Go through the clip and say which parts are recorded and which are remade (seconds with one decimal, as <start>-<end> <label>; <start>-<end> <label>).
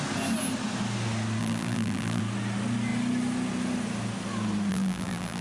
0.0-1.4 recorded; 1.4-2.2 remade; 2.2-4.7 recorded; 4.7-5.4 remade